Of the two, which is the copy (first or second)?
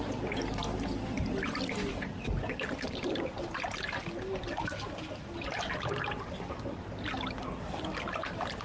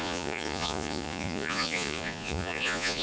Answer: second